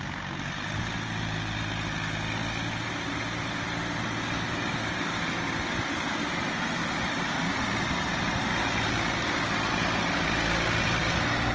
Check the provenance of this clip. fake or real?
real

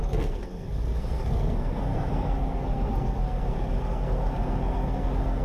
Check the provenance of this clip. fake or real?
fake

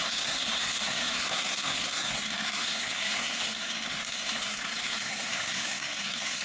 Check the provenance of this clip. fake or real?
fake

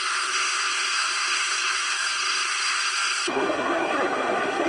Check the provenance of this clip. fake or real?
fake